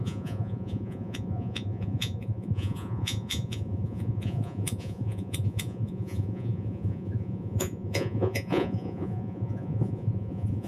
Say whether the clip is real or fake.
fake